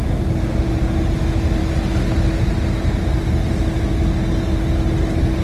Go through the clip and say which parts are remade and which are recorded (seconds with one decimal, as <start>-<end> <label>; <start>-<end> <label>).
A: 0.0-5.4 recorded